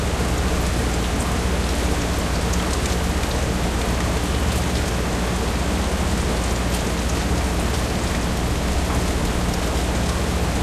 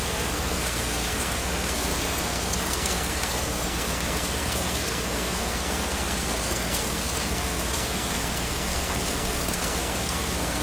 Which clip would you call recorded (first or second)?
first